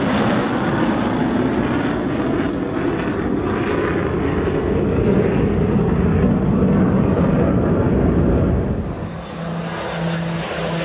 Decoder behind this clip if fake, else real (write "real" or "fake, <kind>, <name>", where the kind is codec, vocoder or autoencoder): real